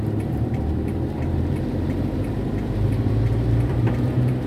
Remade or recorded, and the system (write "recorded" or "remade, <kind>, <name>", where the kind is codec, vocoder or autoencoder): remade, vocoder, BigVGAN v2